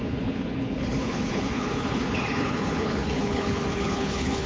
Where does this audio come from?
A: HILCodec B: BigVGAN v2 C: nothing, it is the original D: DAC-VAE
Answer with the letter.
A